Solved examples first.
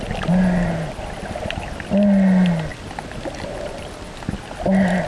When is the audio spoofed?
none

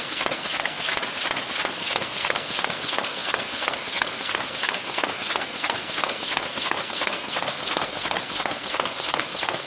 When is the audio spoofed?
0.0-0.9 (codec, SNAC); 1.7-9.7

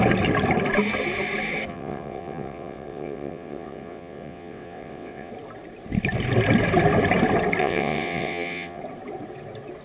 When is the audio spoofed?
1.7-5.3 (vocoder, WaveNeXt); 7.6-8.8

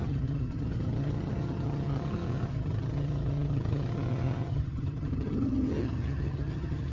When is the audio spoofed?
0.0-6.9 (vocoder, HiFi-GAN)

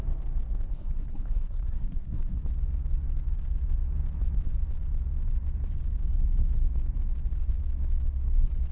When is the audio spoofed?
0.7-2.4 (codec, SNAC)